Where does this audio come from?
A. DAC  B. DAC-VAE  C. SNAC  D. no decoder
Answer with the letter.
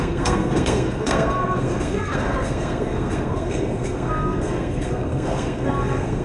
C